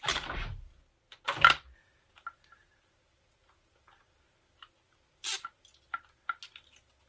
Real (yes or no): yes